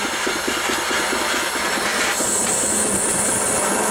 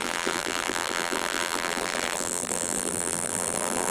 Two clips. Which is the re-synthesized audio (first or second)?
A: second